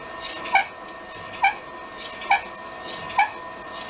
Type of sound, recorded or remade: recorded